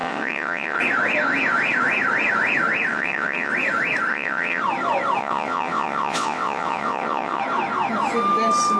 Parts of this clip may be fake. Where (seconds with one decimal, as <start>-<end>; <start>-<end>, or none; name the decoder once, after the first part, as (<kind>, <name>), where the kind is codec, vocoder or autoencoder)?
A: 0.0-0.8 (vocoder, WaveNeXt); 2.9-3.5; 4.1-4.6; 5.2-7.4